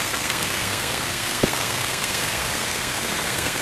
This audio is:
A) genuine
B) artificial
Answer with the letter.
B